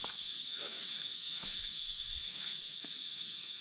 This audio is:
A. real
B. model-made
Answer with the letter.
B